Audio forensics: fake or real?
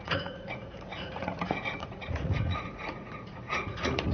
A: fake